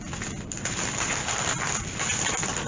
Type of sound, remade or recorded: recorded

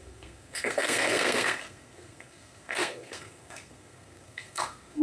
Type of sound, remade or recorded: remade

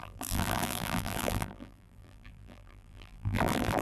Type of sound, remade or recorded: remade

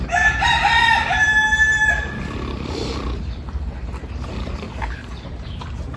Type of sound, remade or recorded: remade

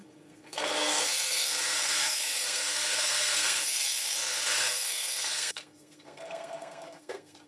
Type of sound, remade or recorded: remade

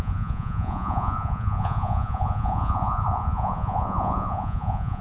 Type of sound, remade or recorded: remade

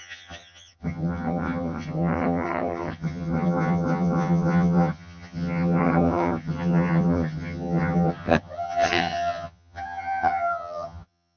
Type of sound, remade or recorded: remade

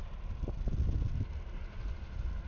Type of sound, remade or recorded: recorded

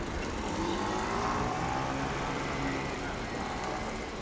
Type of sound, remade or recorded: remade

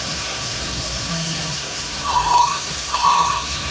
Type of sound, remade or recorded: remade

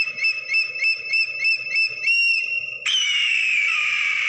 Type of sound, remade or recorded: remade